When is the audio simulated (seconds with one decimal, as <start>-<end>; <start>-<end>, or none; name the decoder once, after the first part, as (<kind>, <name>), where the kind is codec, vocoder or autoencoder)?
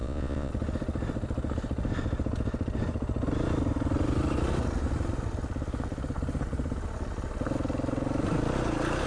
0.0-0.5 (vocoder, Vocos)